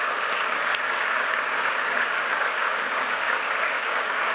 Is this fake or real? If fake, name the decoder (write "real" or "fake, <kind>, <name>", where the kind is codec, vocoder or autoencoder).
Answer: fake, codec, DAC